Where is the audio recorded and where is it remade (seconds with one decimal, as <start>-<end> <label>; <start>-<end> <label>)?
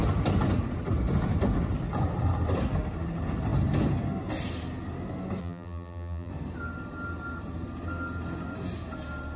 0.0-5.4 recorded; 5.4-6.3 remade; 6.3-9.4 recorded